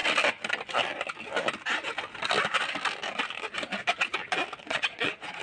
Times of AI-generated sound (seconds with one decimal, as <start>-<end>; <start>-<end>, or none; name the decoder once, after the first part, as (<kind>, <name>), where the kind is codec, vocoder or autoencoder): 4.6-5.4 (vocoder, Vocos)